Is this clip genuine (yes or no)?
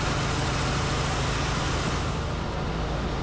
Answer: yes